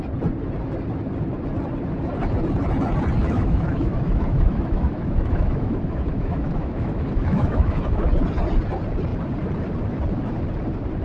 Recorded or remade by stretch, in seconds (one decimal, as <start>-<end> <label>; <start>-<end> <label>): 0.0-3.2 recorded; 3.2-8.1 remade; 8.1-11.0 recorded